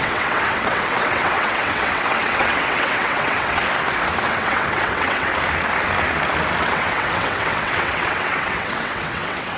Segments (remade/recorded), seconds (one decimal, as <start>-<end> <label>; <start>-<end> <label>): 0.0-3.6 remade; 3.6-4.3 recorded; 4.3-5.3 remade; 5.3-6.6 recorded; 6.6-9.6 remade